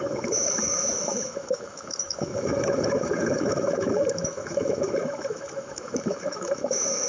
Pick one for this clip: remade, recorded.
remade